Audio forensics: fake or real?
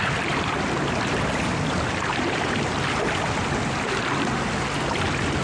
real